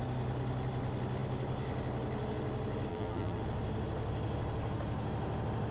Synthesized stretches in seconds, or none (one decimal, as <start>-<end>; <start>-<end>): 2.9-3.4